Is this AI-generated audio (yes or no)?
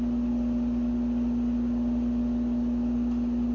no